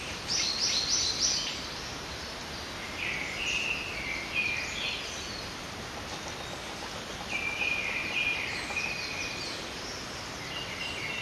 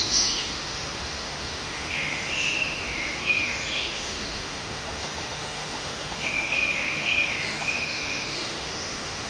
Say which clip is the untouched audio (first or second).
first